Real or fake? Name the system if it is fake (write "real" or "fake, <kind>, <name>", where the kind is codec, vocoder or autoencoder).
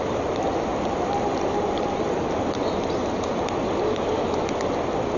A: real